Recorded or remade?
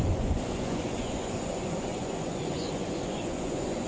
remade